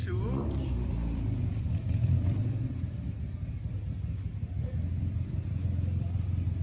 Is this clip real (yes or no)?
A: no